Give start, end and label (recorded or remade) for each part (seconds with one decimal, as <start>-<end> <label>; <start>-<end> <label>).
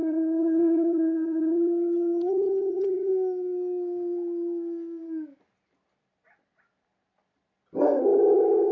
0.0-3.1 remade; 3.1-8.0 recorded; 8.0-8.7 remade